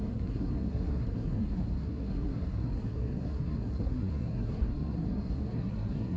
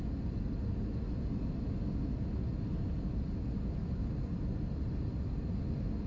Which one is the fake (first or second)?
first